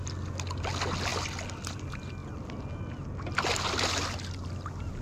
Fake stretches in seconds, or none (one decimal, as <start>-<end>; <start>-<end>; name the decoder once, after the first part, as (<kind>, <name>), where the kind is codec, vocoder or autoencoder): none